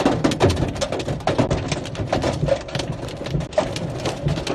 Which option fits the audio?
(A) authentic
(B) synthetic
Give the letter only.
A